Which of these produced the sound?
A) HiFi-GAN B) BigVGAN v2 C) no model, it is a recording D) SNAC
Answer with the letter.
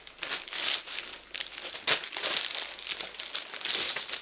C